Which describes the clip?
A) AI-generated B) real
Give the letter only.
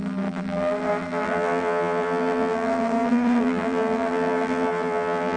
A